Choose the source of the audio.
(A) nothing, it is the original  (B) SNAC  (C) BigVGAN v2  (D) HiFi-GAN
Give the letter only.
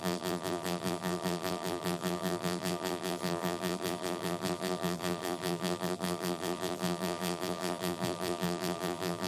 C